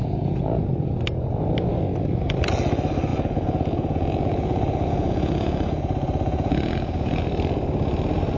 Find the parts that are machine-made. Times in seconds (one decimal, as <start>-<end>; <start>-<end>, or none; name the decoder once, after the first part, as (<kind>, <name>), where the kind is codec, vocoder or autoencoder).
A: 0.0-0.6 (vocoder, Vocos); 3.1-7.2

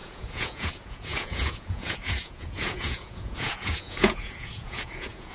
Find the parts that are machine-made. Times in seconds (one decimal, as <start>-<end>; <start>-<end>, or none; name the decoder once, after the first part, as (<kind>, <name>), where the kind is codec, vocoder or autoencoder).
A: 0.0-5.3 (vocoder, Vocos)

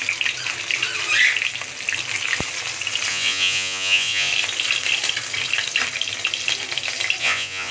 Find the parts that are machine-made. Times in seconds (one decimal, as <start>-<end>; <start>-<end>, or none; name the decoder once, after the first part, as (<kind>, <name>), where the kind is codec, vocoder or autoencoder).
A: 3.1-4.3 (vocoder, Vocos); 7.2-7.7